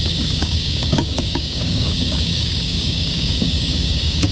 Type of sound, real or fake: fake